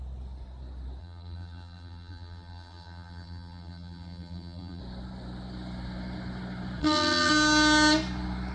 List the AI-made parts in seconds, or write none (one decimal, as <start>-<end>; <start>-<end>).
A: 1.0-4.8; 6.8-7.3